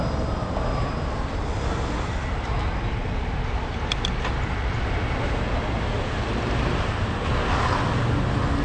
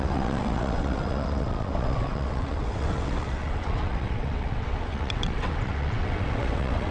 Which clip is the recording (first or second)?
first